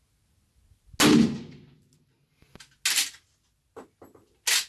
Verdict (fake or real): real